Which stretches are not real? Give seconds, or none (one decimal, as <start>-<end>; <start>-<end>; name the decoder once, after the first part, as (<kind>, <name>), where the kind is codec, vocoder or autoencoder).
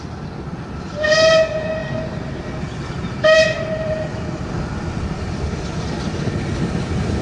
none